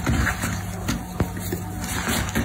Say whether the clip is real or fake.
real